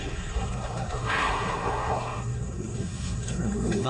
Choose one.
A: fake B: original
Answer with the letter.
A